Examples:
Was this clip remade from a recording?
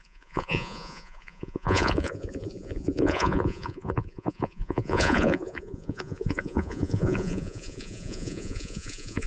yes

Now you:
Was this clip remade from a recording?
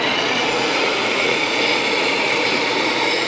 yes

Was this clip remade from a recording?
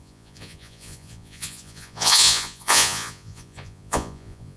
yes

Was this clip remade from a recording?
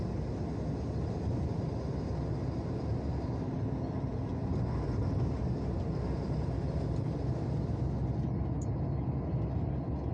no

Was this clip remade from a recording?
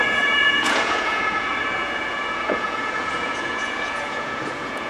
yes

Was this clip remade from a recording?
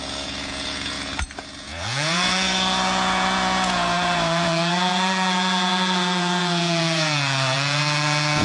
yes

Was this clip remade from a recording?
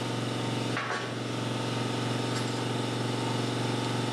no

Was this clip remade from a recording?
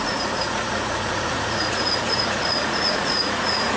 yes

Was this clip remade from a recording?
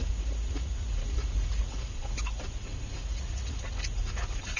yes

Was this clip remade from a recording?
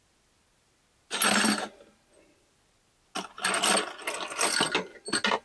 no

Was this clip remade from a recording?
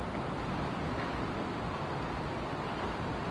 no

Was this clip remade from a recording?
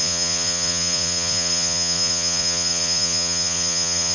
yes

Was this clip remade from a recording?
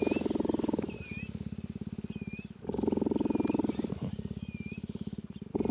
no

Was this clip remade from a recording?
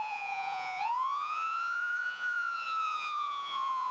yes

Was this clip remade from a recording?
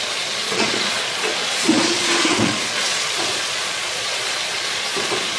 yes